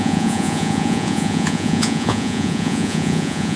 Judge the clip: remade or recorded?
remade